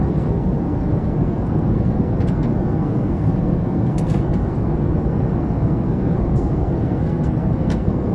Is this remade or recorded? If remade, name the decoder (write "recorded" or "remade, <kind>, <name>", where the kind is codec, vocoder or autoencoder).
remade, codec, SNAC